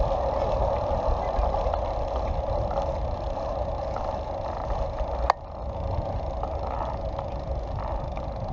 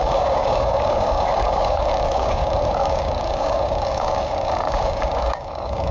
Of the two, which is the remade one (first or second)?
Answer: second